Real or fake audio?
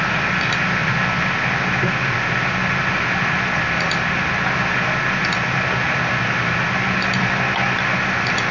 real